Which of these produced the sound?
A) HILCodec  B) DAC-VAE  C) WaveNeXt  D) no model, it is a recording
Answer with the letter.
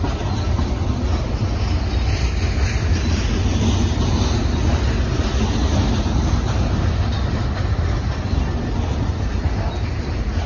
D